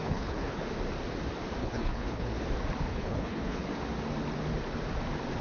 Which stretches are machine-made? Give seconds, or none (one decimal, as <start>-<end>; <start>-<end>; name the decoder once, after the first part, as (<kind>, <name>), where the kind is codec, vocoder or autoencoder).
0.0-0.6 (codec, HILCodec); 1.6-2.3; 2.9-3.6